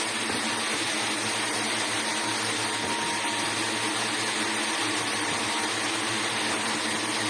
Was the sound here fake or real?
real